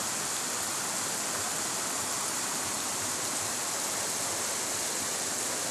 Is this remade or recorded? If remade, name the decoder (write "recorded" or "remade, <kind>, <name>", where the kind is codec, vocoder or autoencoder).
recorded